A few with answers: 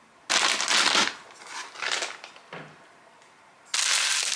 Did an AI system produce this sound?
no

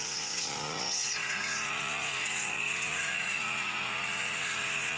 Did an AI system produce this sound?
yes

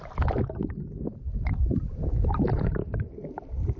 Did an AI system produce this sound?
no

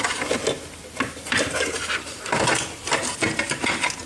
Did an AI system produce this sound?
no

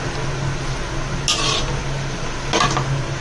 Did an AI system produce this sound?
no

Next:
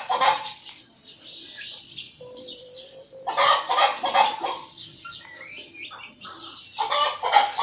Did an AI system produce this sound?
no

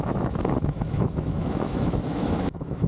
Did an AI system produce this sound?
yes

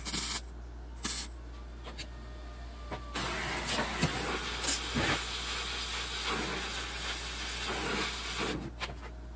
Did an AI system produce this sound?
no